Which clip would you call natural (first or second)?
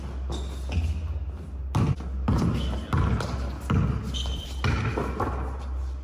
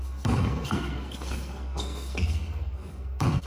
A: first